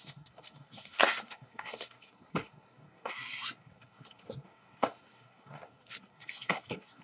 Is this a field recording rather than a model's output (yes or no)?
no